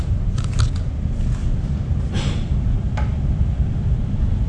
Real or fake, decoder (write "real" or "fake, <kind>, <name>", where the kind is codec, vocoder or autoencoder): fake, vocoder, BigVGAN v2